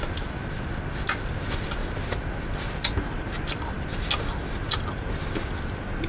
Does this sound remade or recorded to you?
recorded